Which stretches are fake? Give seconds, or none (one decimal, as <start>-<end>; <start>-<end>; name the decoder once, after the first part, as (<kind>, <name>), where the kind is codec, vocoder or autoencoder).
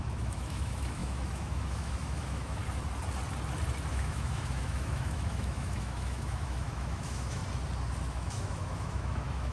0.0-2.6 (autoencoder, DAC-VAE); 3.9-7.4; 8.1-9.5